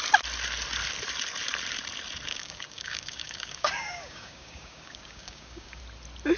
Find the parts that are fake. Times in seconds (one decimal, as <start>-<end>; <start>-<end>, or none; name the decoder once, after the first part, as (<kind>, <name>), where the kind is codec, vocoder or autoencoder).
2.3-5.8 (codec, DAC)